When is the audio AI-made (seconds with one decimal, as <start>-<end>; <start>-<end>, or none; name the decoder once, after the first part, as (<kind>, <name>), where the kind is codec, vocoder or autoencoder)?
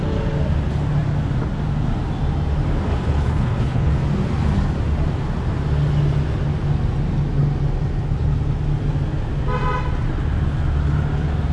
2.9-3.9 (codec, HILCodec)